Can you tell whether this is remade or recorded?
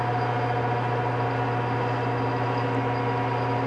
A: recorded